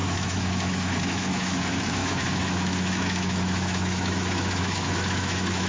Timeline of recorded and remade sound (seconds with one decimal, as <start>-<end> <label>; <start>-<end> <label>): 0.0-5.7 remade